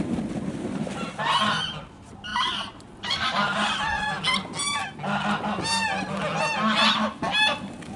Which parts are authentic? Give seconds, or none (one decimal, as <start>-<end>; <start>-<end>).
0.0-2.3; 4.0-8.0